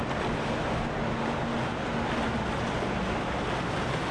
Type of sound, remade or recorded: recorded